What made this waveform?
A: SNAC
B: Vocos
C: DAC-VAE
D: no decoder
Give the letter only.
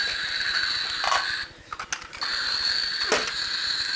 D